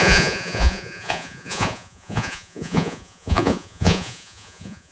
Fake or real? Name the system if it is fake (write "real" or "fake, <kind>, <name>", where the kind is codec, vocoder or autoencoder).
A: fake, vocoder, Vocos